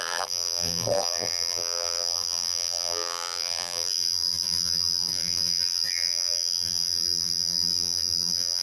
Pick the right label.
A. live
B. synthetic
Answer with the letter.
B